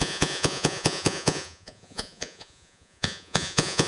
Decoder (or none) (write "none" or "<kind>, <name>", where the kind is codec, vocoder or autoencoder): vocoder, Vocos